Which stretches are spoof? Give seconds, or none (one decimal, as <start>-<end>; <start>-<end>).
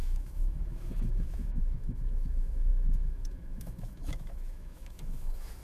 0.0-5.6